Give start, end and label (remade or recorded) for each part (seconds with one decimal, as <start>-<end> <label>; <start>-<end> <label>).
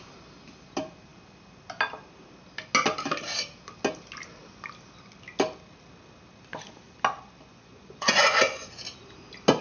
0.0-7.5 recorded; 7.5-8.7 remade; 8.7-9.6 recorded